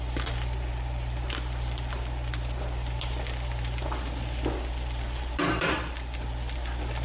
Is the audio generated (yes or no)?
no